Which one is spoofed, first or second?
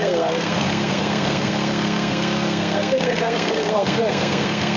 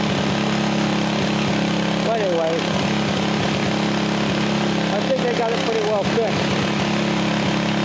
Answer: first